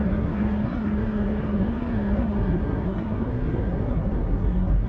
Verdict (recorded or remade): remade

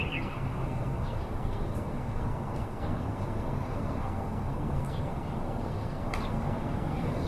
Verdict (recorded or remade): remade